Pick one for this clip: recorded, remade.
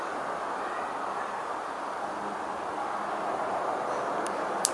recorded